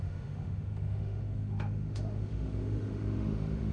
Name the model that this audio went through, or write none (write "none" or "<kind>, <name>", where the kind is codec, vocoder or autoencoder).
autoencoder, DAC-VAE